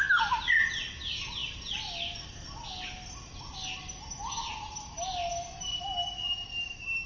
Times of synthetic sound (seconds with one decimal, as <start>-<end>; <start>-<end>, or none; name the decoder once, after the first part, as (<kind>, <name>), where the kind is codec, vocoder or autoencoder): 5.3-5.9 (vocoder, BigVGAN v2)